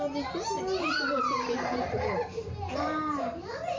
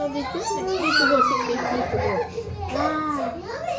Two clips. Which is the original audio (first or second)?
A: second